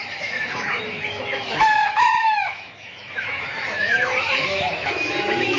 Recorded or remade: remade